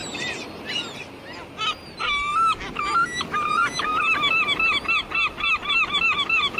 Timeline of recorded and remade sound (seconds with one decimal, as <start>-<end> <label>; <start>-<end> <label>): 0.0-6.6 recorded